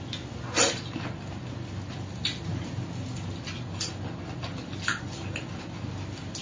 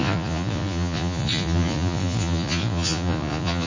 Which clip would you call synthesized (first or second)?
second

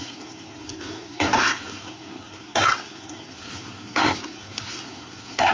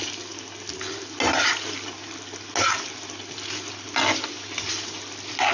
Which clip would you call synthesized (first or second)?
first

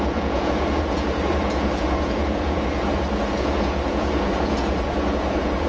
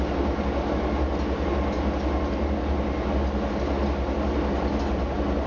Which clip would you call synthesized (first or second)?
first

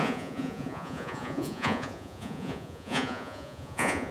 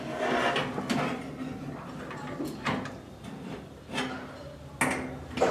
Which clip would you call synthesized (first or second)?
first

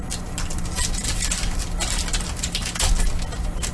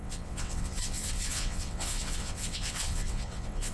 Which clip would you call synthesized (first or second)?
second